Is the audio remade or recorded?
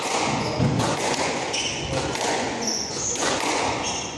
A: remade